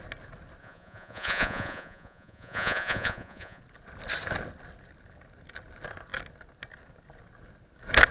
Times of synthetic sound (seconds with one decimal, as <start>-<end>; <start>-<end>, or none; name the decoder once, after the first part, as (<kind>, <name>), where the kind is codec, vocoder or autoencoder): 0.6-3.6 (vocoder, Vocos)